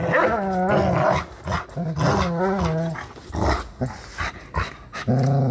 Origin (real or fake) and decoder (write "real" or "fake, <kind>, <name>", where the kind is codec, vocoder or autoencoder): real